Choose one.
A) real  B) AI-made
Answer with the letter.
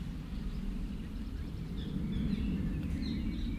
A